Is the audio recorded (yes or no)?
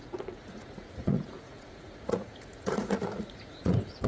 no